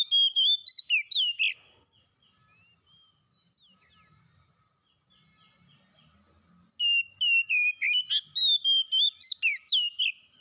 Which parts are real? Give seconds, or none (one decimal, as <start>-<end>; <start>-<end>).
0.0-10.4